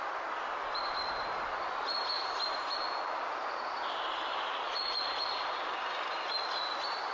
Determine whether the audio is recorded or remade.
recorded